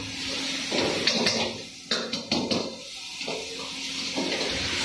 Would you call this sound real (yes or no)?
yes